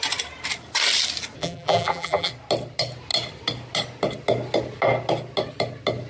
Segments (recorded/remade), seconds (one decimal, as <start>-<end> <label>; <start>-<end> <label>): 0.0-1.4 recorded; 1.4-2.3 remade; 2.3-6.1 recorded